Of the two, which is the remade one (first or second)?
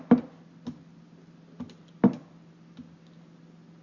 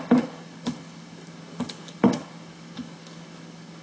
second